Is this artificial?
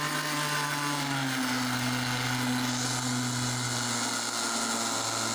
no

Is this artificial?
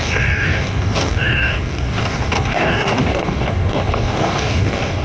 yes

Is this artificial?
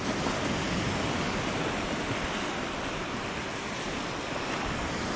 no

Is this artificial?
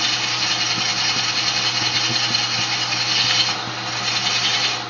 no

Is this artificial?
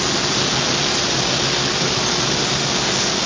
no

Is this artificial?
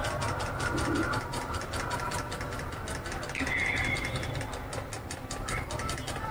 no